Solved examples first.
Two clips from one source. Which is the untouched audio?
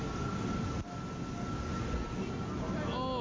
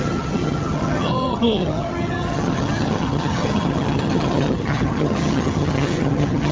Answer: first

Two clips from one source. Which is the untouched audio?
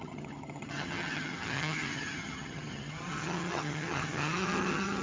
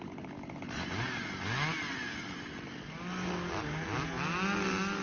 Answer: second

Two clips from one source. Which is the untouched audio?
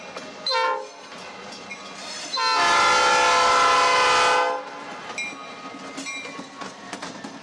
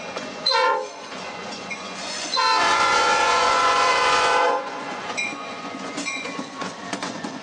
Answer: first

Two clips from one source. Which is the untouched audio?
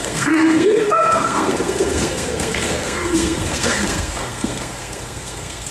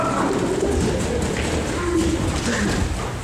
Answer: second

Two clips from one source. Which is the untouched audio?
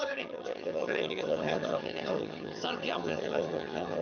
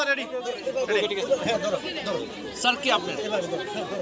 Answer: second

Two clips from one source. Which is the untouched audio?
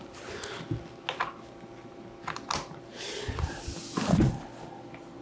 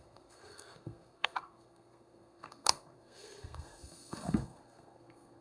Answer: first